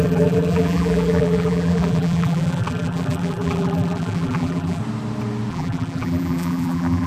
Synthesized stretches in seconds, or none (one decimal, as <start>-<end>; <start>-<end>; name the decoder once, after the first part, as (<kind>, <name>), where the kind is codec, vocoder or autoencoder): 0.0-4.8 (vocoder, BigVGAN v2); 5.5-7.1

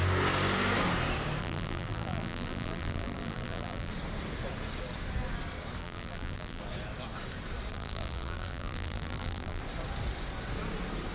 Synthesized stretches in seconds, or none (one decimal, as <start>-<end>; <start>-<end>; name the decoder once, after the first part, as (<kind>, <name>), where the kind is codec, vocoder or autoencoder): 1.4-3.9 (vocoder, BigVGAN v2); 5.8-6.6; 7.7-9.6

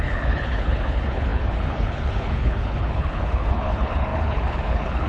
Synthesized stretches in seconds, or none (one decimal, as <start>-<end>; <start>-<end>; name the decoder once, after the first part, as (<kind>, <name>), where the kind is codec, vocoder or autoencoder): 0.0-5.1 (codec, HILCodec)

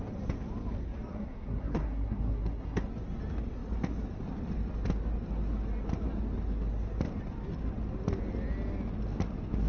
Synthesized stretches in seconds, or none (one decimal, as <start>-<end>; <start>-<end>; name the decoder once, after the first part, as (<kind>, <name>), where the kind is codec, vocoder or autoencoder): 1.1-2.9 (codec, SNAC)